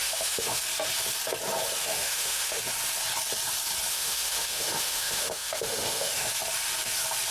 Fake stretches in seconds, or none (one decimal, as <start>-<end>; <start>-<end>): 0.0-0.6; 1.8-2.6; 3.9-6.3